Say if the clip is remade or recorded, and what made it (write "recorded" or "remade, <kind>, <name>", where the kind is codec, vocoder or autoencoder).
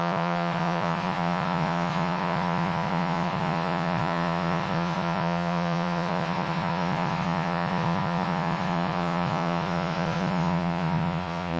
remade, vocoder, Vocos